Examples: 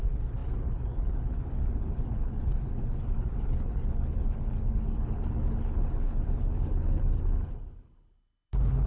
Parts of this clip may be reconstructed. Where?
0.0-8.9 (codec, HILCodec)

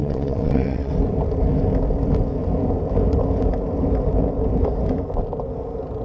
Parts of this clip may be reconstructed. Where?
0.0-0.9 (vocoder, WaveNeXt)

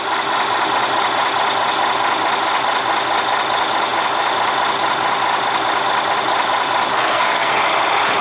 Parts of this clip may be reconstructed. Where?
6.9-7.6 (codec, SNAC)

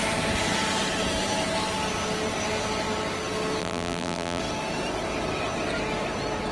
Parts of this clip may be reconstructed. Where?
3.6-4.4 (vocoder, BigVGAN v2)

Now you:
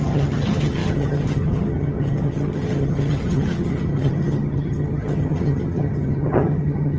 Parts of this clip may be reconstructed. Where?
0.0-7.0 (vocoder, HiFi-GAN)